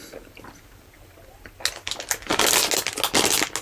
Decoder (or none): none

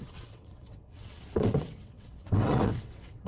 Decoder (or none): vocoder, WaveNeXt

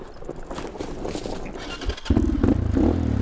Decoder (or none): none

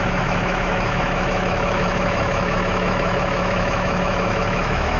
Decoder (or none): autoencoder, DAC-VAE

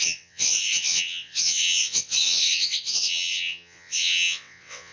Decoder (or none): vocoder, WaveNeXt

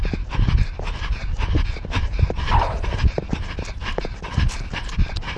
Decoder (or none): none